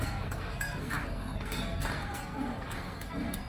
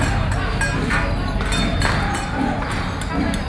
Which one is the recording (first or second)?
second